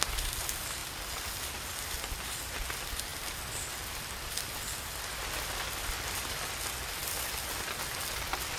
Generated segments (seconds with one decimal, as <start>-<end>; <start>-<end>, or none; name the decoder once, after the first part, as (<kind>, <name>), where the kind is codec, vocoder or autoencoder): none